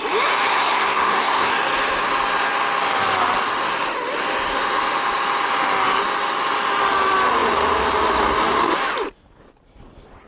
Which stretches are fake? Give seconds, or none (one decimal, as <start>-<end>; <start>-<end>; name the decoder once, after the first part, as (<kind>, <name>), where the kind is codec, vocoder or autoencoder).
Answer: 0.5-1.5 (codec, SNAC)